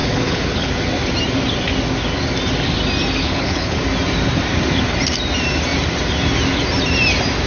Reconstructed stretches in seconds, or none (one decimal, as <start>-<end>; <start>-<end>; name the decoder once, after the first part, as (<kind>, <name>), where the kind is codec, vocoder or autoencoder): 0.0-0.7 (codec, HILCodec); 3.2-3.8